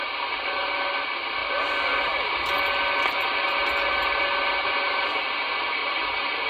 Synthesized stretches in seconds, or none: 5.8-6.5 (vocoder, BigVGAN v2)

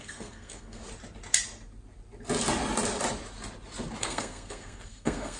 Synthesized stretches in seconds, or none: 0.0-0.8 (codec, SNAC); 4.0-5.4

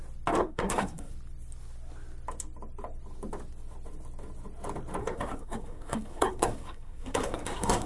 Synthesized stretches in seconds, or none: 0.4-1.1 (codec, SNAC); 5.0-7.9

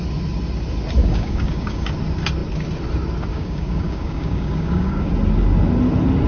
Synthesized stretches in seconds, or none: 1.0-1.9 (codec, DAC); 3.3-5.1

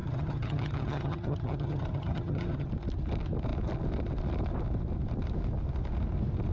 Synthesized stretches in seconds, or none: 0.0-2.7 (vocoder, HiFi-GAN)